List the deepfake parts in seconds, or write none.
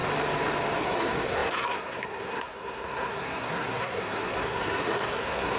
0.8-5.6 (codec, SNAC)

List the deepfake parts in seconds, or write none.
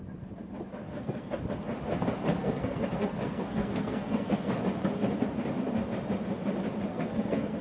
0.8-1.4 (codec, SNAC); 2.4-4.5; 6.9-7.6